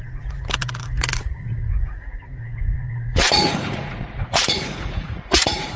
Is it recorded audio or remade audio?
remade